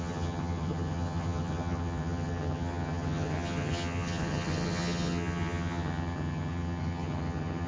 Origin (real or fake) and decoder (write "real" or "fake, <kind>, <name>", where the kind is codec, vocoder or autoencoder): fake, vocoder, HiFi-GAN